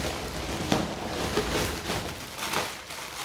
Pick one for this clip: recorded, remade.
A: recorded